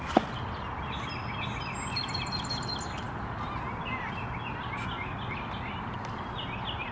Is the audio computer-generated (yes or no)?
no